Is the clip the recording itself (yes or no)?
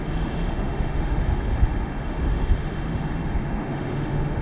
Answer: no